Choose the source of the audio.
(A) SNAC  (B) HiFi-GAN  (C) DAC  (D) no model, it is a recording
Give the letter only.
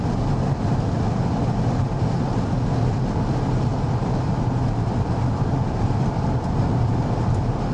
D